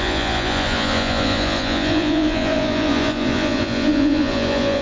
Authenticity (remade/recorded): remade